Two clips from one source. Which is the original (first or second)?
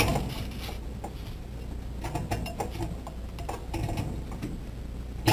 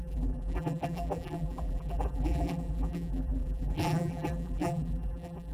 first